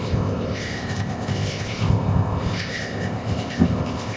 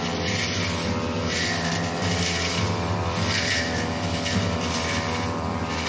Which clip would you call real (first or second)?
second